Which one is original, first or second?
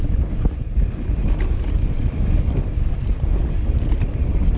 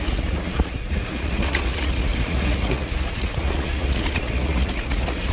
first